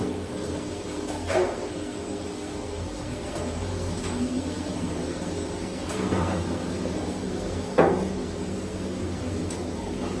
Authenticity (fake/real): fake